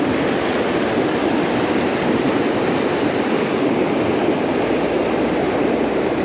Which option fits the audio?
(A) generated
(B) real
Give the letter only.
B